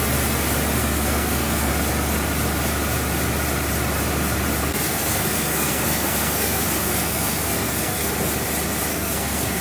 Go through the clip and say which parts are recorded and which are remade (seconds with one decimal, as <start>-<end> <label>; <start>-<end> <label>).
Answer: 0.0-0.8 recorded; 0.8-1.7 remade; 1.7-4.6 recorded; 4.6-8.1 remade; 8.1-8.9 recorded; 8.9-9.6 remade